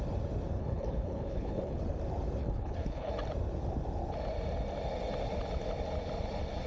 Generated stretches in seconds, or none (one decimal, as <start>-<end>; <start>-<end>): 0.6-1.8; 2.4-3.1